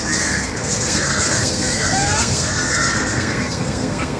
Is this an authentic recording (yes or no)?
no